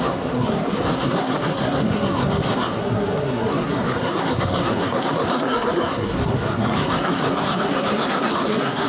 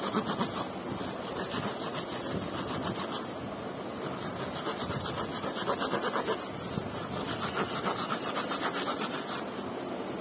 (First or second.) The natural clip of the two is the second